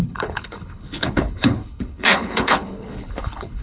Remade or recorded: remade